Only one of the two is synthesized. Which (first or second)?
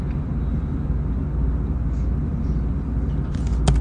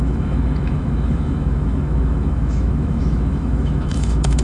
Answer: second